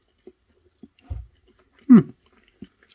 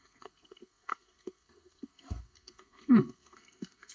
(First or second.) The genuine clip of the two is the first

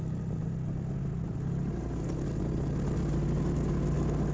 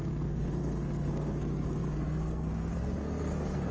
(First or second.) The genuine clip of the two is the first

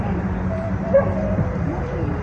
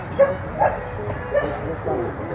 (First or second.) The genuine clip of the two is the second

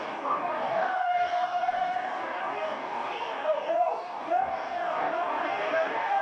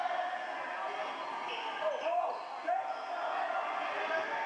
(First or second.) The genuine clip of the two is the second